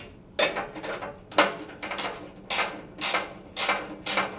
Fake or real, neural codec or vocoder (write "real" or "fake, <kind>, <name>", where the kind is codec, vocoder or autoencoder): real